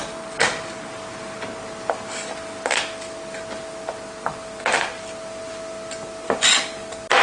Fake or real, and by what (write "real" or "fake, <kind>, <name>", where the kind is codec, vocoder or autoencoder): real